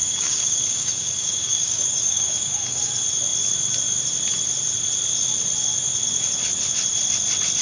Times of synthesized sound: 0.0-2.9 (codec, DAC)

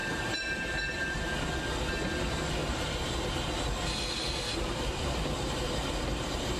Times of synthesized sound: 0.0-1.6 (vocoder, BigVGAN v2); 2.6-3.5; 4.5-6.6

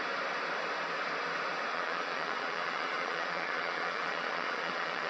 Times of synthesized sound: 1.7-5.1 (vocoder, Vocos)